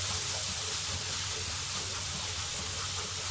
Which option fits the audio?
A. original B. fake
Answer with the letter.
A